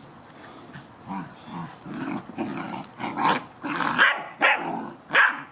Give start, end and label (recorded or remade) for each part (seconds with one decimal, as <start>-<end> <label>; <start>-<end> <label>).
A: 0.0-5.5 recorded